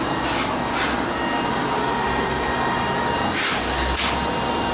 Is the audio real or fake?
real